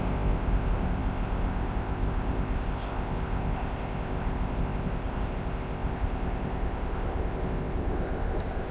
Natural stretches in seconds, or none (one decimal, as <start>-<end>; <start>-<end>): none